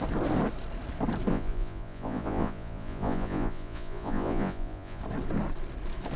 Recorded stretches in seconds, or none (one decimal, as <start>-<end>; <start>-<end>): 0.0-1.3; 5.0-6.2